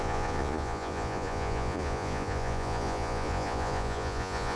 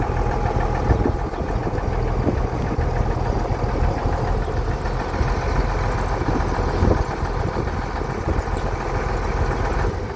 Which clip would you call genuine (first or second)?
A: second